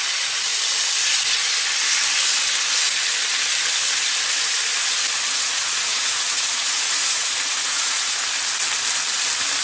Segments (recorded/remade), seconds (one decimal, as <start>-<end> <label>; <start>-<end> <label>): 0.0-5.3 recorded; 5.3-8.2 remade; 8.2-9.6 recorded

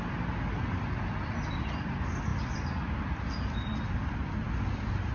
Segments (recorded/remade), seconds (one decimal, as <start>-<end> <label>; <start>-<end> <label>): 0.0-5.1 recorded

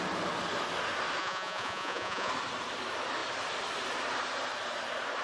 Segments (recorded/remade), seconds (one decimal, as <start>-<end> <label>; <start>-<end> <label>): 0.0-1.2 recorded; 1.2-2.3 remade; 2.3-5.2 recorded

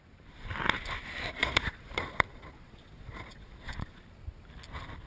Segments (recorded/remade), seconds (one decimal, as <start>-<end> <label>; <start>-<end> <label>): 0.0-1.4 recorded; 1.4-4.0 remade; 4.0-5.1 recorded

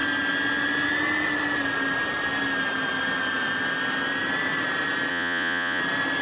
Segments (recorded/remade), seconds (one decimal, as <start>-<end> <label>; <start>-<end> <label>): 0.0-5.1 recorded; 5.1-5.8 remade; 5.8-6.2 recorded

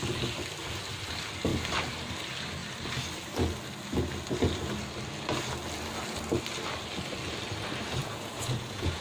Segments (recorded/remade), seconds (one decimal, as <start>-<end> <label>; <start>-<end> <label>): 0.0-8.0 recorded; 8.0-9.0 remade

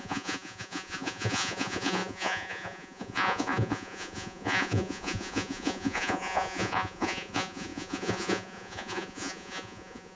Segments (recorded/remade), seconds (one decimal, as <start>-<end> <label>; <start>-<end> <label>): 0.0-10.2 remade